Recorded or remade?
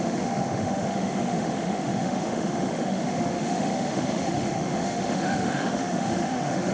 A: remade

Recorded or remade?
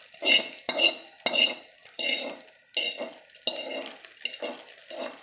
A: recorded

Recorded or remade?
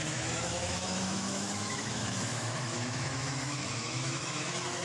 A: remade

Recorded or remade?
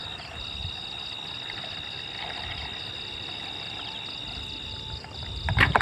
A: recorded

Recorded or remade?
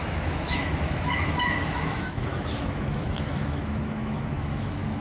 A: remade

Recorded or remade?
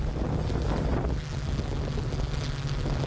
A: recorded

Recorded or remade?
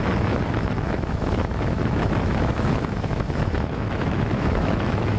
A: remade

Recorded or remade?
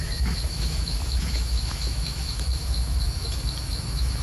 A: remade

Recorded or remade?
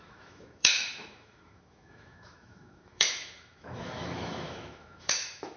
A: remade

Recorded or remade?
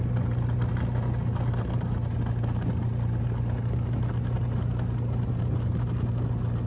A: recorded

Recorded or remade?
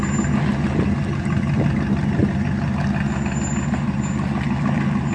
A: recorded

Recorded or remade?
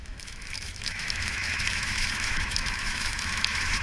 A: remade